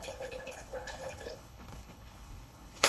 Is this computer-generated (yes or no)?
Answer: yes